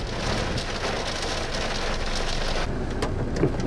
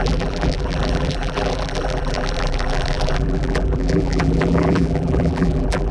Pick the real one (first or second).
first